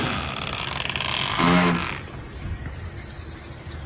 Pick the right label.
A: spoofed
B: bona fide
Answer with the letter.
B